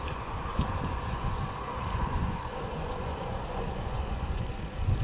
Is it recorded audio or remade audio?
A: remade